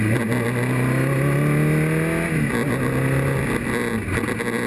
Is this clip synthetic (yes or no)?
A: no